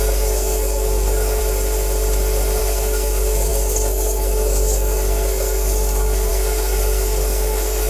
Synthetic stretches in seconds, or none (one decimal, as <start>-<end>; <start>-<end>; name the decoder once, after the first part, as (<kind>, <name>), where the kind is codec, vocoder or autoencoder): 0.0-1.4 (codec, SNAC); 2.6-7.9